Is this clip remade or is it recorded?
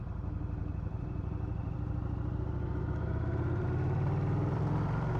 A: remade